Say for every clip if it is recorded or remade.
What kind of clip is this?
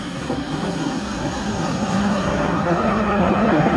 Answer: remade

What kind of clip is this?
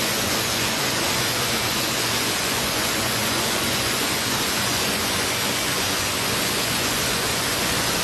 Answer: remade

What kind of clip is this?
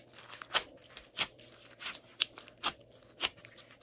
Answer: recorded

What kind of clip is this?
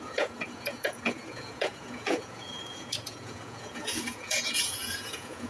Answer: remade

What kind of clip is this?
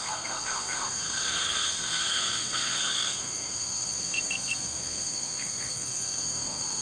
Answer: remade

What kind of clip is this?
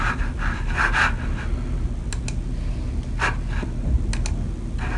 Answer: recorded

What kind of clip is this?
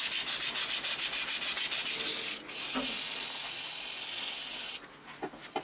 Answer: recorded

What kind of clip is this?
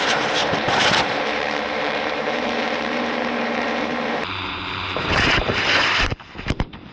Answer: remade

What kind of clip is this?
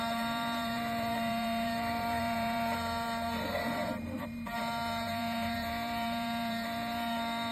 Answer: remade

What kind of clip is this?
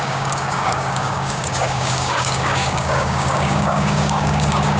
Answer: remade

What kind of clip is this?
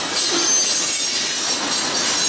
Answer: recorded